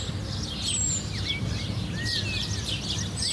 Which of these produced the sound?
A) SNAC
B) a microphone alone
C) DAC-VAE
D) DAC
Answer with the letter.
B